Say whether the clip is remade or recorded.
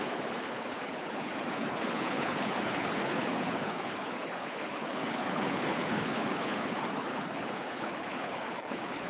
remade